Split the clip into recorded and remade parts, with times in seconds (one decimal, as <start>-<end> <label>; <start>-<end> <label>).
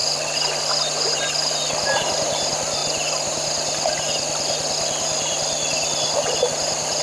0.0-7.0 recorded